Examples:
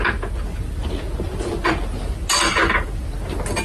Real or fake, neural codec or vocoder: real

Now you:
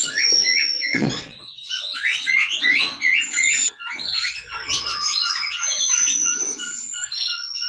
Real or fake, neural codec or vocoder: fake, vocoder, Vocos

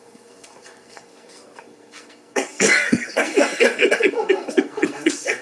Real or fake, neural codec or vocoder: fake, codec, SNAC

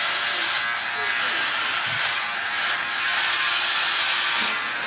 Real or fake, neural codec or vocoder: real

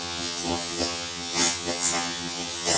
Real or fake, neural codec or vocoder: fake, vocoder, HiFi-GAN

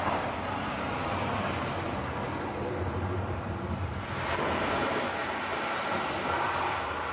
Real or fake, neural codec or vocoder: fake, vocoder, BigVGAN v2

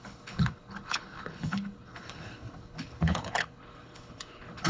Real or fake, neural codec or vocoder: fake, codec, HILCodec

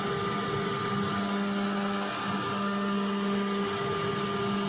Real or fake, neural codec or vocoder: real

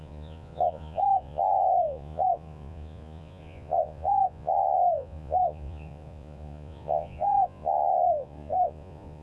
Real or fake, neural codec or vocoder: fake, vocoder, Vocos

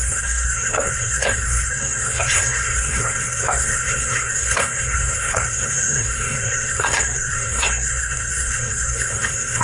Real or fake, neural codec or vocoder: fake, codec, SNAC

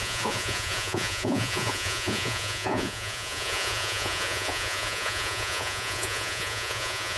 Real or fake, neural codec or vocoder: fake, vocoder, Vocos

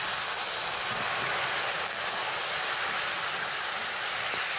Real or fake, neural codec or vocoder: real